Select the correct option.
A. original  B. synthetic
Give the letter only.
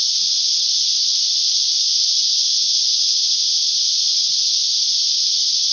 A